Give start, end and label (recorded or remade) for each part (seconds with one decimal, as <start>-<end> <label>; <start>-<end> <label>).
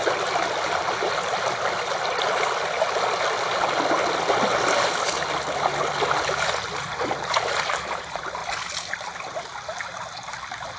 0.0-10.8 recorded